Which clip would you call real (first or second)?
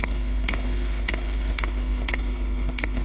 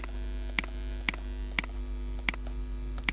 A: second